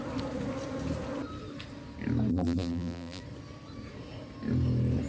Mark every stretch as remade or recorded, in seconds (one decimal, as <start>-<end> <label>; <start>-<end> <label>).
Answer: 0.0-2.3 recorded; 2.3-3.2 remade; 3.2-5.1 recorded